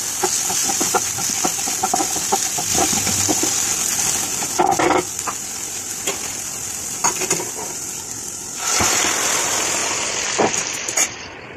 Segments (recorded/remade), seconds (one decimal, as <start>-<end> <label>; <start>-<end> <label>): 0.0-0.6 recorded; 0.6-1.1 remade; 1.1-9.8 recorded; 9.8-11.6 remade

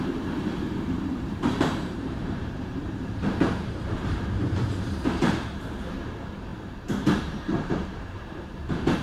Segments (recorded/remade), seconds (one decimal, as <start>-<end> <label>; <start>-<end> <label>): 0.0-9.0 remade

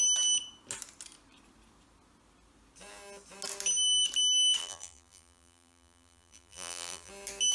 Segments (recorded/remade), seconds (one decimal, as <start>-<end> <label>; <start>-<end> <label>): 0.0-4.6 recorded; 4.6-7.1 remade; 7.1-7.5 recorded

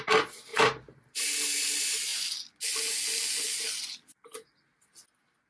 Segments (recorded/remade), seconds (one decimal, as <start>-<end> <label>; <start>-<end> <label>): 0.0-0.5 recorded; 0.5-1.4 remade; 1.4-5.5 recorded

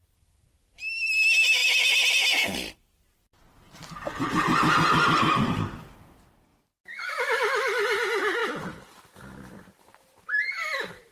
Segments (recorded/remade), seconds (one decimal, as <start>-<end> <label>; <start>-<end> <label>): 0.0-8.4 recorded; 8.4-9.0 remade; 9.0-11.1 recorded

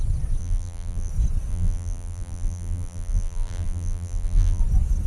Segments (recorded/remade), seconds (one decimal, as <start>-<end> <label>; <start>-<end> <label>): 0.0-0.4 recorded; 0.4-1.1 remade; 1.1-1.5 recorded; 1.5-4.6 remade; 4.6-5.1 recorded